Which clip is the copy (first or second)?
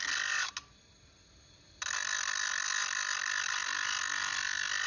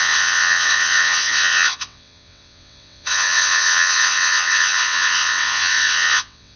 second